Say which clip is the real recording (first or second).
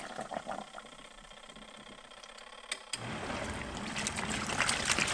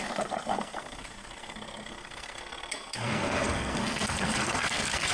first